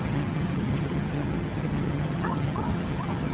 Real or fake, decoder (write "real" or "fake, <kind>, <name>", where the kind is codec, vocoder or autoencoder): fake, vocoder, HiFi-GAN